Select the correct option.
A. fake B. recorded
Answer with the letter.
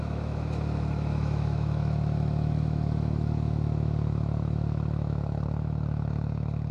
A